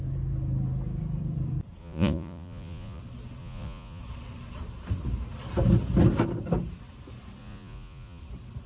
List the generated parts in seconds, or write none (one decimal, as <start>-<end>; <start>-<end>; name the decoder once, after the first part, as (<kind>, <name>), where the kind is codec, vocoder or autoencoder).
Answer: 1.8-3.0 (vocoder, Vocos); 3.4-4.0; 7.4-8.2